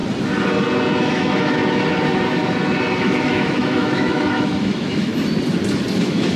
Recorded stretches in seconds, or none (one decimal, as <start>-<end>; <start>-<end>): 0.0-1.0; 1.6-3.0; 5.1-5.9